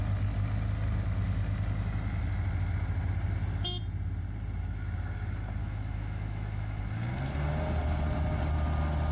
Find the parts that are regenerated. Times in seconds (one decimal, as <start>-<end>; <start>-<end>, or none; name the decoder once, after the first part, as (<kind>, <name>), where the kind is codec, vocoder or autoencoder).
5.6-6.8 (autoencoder, DAC-VAE)